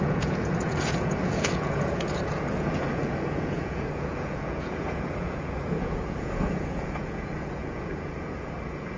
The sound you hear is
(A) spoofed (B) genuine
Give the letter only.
A